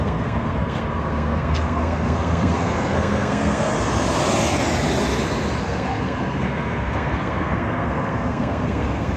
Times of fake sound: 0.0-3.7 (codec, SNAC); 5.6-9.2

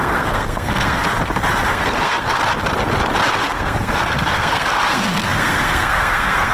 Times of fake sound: 0.0-1.0 (codec, SNAC); 1.7-2.4; 3.4-6.5

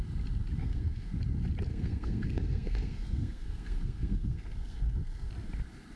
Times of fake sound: 0.6-1.1 (codec, SNAC); 1.7-5.3

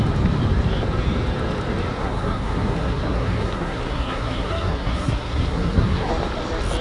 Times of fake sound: 2.0-6.1 (codec, SNAC)

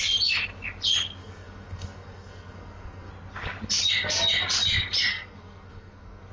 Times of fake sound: 1.2-3.1 (codec, SNAC); 5.1-6.3

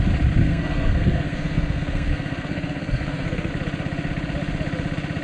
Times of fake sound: 0.4-3.5 (codec, SNAC)

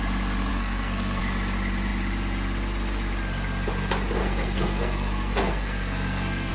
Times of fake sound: 0.5-1.2 (codec, SNAC); 4.2-6.5

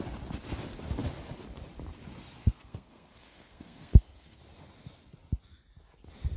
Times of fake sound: 2.4-4.4 (codec, SNAC)